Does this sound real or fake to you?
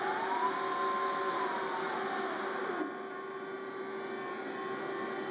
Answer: real